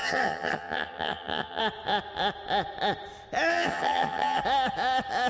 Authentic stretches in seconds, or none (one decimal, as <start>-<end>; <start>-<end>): 1.6-3.5; 4.4-5.3